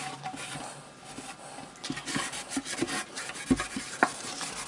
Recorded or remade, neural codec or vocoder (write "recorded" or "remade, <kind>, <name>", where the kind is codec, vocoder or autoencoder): recorded